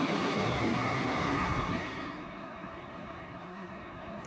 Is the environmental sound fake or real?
fake